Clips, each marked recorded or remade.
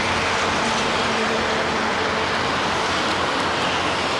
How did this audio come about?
recorded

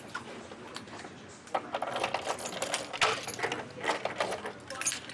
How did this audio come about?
recorded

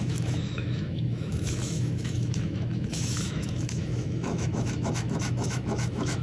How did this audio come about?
remade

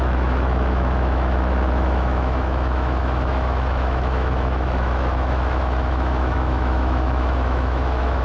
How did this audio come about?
remade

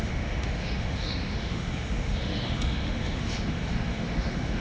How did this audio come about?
remade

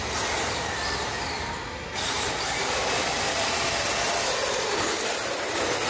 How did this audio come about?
recorded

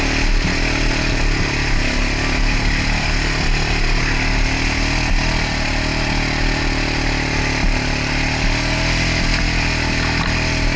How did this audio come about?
recorded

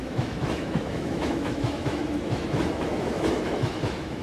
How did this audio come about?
remade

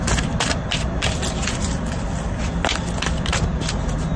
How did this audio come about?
recorded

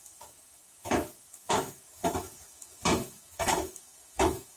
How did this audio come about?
remade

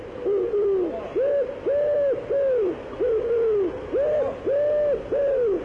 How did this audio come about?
recorded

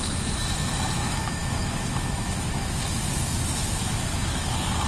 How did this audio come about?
remade